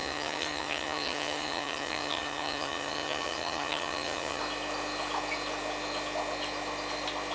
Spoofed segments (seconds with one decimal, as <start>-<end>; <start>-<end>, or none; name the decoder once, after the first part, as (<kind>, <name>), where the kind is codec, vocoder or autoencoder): 0.0-4.4 (vocoder, HiFi-GAN)